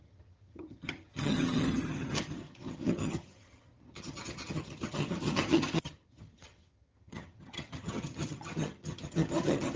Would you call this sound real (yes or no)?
no